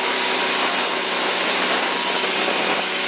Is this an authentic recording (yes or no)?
yes